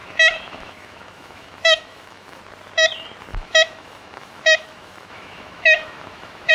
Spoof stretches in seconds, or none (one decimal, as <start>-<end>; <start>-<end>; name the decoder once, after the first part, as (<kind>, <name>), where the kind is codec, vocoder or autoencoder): 0.0-2.4 (autoencoder, DAC-VAE); 3.3-6.5